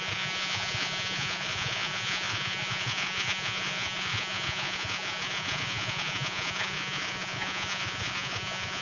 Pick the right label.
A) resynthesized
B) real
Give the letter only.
A